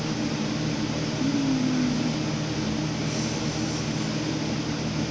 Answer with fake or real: real